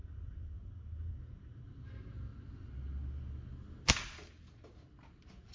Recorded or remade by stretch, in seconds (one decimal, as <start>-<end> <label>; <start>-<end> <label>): 0.0-5.5 recorded